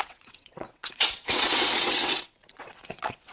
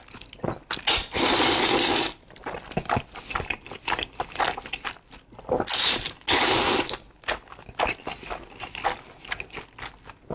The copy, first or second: first